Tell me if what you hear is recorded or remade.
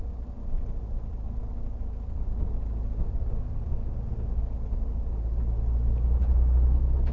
recorded